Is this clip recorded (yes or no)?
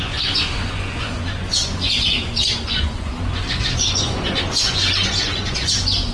no